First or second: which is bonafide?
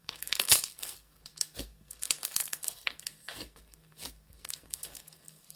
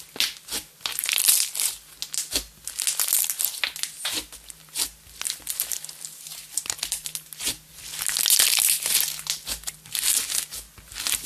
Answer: second